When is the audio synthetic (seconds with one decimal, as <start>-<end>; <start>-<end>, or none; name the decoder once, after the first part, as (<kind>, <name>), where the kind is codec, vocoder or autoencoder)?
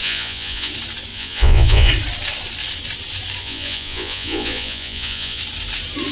0.0-0.7 (vocoder, Vocos); 1.1-1.9; 3.4-5.4